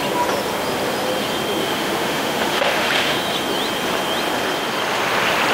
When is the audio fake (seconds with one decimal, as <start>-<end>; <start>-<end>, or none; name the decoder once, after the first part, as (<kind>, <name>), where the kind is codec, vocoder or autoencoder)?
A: 1.6-3.2 (autoencoder, DAC-VAE)